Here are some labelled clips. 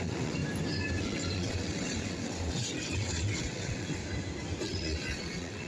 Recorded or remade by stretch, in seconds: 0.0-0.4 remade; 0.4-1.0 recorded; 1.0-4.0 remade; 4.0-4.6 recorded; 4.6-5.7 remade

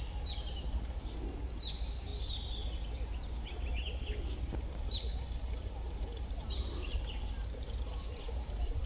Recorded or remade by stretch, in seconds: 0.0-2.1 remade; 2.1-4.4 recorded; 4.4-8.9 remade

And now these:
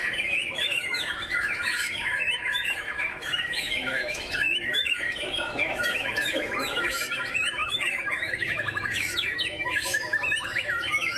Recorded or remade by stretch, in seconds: 0.0-11.2 remade

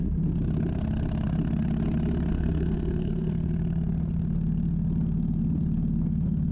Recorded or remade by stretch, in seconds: 0.0-2.3 recorded; 2.3-3.5 remade; 3.5-6.5 recorded

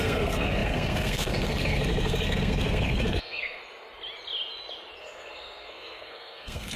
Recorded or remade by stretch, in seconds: 0.0-3.6 remade; 3.6-5.0 recorded; 5.0-6.8 remade

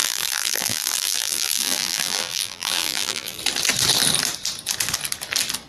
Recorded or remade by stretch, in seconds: 0.0-3.4 remade; 3.4-5.7 recorded